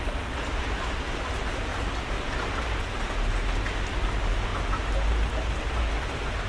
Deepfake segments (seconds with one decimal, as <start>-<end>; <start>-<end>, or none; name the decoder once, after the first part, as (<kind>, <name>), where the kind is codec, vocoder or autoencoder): 0.0-1.7 (vocoder, BigVGAN v2); 4.1-4.5